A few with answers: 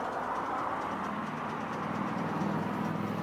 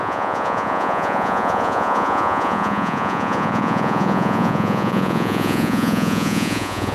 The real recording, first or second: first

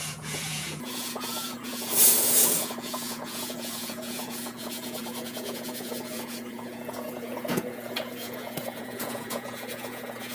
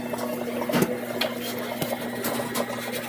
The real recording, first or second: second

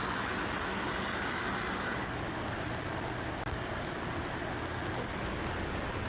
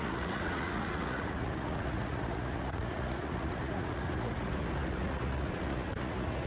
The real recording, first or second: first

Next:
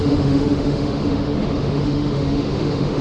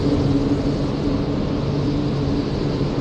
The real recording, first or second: second